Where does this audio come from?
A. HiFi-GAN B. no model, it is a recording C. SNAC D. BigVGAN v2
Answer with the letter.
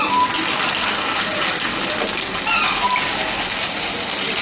B